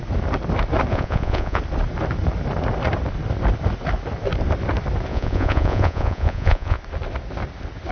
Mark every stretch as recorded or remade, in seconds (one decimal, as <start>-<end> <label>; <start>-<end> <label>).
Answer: 0.0-0.9 recorded; 0.9-1.6 remade; 1.6-5.1 recorded; 5.1-6.8 remade; 6.8-7.9 recorded